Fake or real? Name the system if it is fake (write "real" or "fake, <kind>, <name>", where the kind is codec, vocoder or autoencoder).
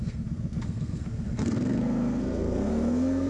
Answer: fake, codec, SNAC